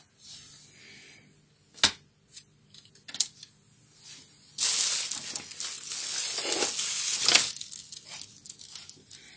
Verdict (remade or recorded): recorded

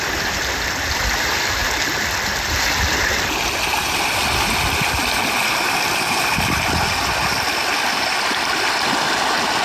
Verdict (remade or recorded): recorded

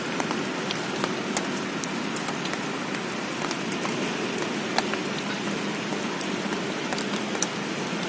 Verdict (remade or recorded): recorded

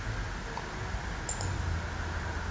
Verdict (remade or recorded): recorded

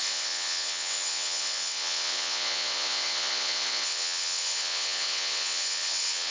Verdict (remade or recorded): remade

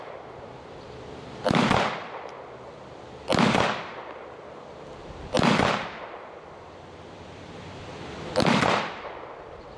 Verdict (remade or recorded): remade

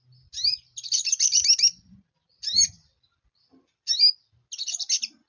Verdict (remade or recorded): recorded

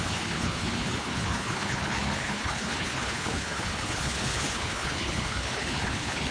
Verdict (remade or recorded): remade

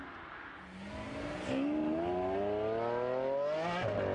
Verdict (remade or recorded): recorded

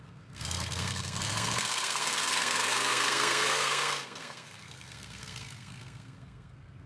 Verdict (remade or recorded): remade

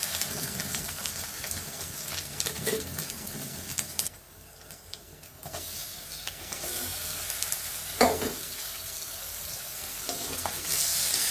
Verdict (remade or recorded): remade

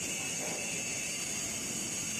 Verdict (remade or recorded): recorded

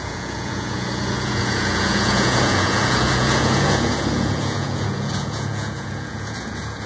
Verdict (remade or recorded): remade